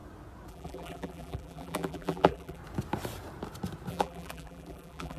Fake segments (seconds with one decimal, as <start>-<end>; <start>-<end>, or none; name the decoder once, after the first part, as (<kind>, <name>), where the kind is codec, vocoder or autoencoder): 0.5-2.6 (vocoder, BigVGAN v2); 3.9-5.2

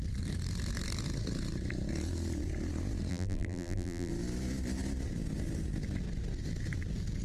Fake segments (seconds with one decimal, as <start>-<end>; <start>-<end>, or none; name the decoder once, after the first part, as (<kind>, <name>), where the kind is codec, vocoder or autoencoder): 3.1-4.1 (vocoder, BigVGAN v2)

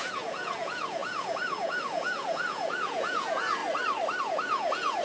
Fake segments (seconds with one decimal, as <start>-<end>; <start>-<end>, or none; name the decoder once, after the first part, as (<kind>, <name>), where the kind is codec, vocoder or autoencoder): 0.0-3.6 (vocoder, Vocos); 4.2-5.0